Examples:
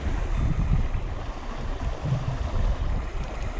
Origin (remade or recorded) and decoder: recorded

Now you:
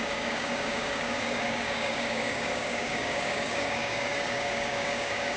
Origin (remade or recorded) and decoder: remade, codec, DAC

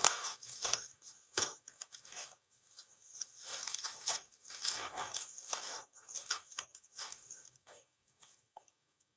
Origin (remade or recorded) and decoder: remade, codec, DAC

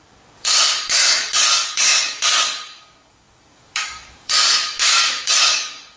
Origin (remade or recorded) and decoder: remade, codec, DAC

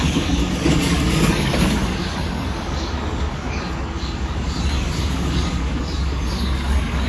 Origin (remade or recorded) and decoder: remade, codec, DAC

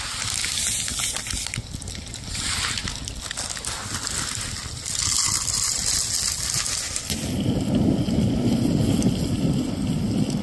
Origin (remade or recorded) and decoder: recorded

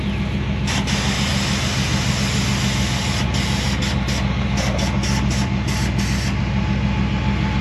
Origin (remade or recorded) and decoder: recorded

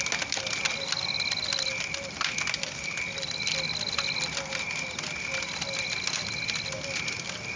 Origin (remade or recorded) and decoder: recorded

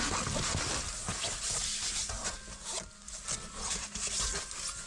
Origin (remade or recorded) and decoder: recorded